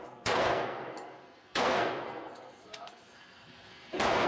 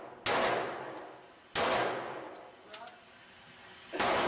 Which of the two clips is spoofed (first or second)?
first